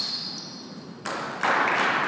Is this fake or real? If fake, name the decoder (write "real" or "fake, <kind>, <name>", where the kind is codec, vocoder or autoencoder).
real